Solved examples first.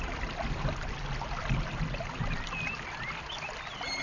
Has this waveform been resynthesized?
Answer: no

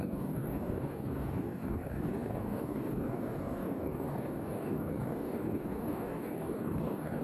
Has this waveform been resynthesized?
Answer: yes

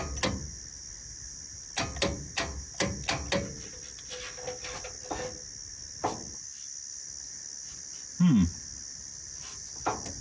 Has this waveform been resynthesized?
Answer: no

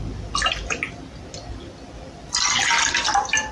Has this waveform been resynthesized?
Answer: no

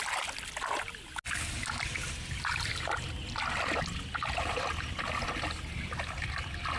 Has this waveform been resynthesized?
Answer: no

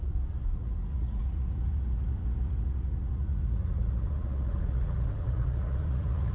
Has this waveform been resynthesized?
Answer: yes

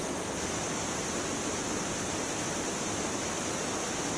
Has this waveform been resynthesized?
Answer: no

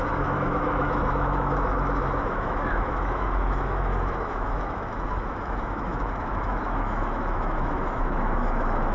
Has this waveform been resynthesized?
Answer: yes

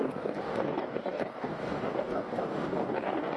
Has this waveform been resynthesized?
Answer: yes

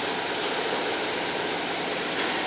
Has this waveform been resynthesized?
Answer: yes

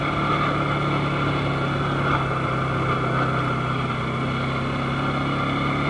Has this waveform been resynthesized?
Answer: no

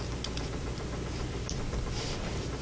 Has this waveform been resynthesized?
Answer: yes